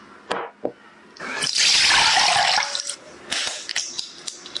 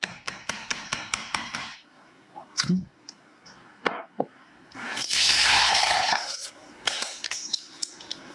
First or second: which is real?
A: first